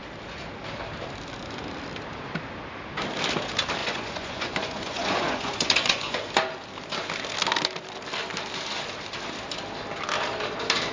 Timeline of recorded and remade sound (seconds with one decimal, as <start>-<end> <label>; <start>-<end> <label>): 0.0-3.8 recorded; 3.8-6.3 remade; 6.3-10.9 recorded